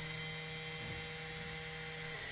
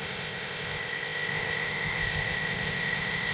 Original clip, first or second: first